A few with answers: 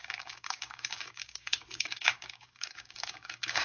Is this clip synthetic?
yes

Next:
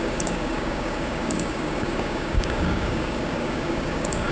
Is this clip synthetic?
yes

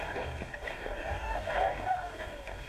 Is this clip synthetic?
yes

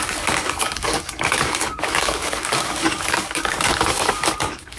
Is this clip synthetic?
yes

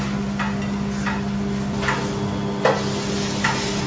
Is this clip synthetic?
no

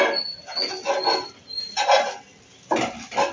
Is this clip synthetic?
no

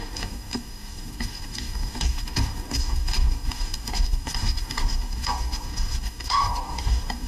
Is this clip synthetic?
yes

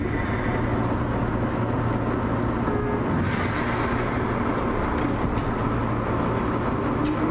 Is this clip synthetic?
no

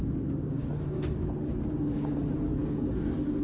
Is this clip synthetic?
yes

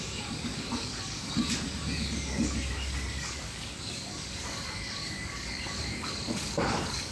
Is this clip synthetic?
yes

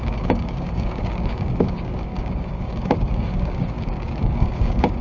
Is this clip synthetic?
yes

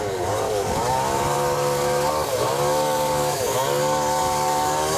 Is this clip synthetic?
yes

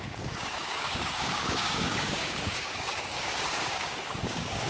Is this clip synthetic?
yes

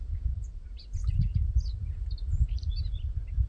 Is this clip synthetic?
no